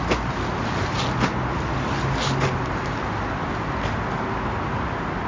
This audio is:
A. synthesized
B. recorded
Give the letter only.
B